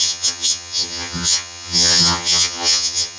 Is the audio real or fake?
fake